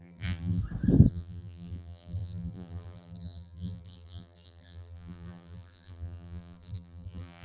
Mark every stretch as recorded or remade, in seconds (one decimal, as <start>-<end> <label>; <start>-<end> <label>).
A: 0.0-0.6 remade; 0.6-1.1 recorded; 1.1-7.4 remade